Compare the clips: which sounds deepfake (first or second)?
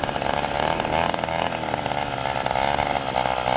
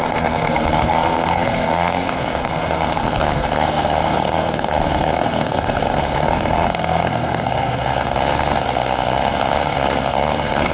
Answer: second